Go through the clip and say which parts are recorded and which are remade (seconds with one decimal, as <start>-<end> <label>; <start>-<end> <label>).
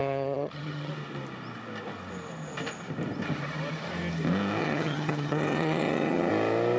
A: 0.0-0.9 remade; 0.9-4.6 recorded; 4.6-6.3 remade; 6.3-6.8 recorded